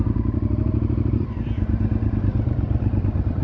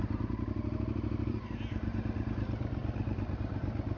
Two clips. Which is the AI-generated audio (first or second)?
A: first